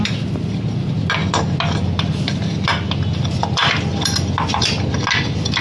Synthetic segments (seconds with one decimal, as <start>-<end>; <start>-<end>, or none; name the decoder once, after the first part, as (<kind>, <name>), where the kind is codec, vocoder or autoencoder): none